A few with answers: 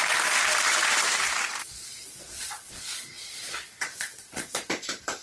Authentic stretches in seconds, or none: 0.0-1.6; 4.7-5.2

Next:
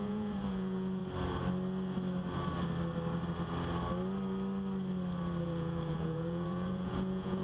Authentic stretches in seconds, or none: 1.0-5.4